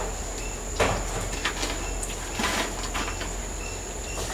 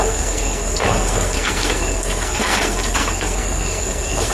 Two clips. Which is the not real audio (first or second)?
second